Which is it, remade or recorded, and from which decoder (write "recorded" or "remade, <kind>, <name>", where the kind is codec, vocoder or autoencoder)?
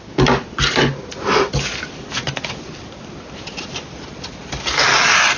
recorded